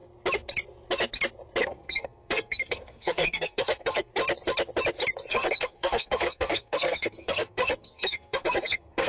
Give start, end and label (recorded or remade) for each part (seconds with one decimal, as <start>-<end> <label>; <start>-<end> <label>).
0.0-1.6 recorded; 1.6-4.1 remade; 4.1-5.3 recorded; 5.3-9.1 remade